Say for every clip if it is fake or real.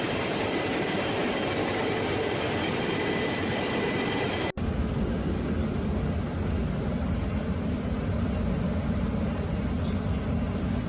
real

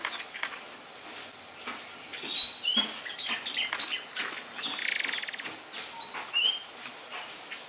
real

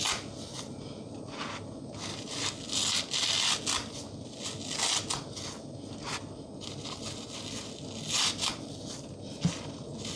real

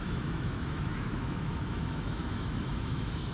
fake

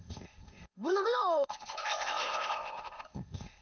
fake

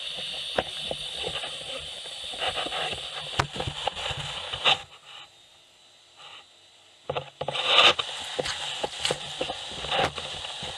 real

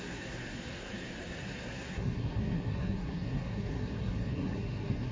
fake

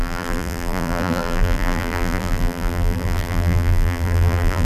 fake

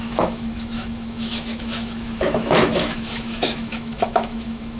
fake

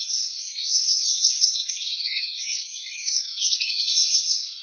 fake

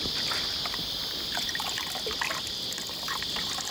real